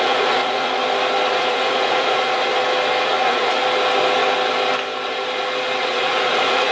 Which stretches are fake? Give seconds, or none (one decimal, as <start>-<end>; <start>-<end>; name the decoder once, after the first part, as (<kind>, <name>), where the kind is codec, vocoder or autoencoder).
0.0-0.8 (vocoder, Vocos); 1.3-2.5; 3.0-3.6; 5.8-6.7